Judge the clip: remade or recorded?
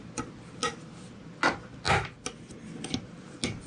recorded